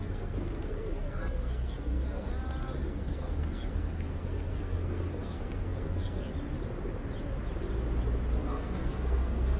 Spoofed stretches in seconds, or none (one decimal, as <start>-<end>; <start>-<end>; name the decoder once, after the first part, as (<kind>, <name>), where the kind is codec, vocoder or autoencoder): 0.0-2.3 (codec, SNAC); 2.8-6.3; 8.4-9.6